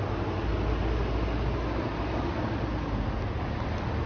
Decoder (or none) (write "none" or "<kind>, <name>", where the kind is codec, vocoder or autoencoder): none